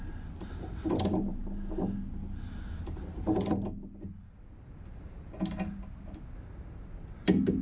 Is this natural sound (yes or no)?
yes